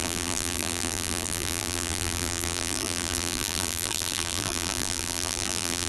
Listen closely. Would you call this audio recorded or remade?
remade